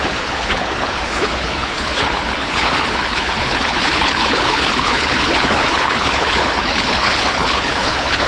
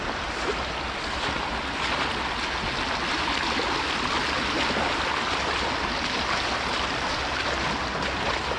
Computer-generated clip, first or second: first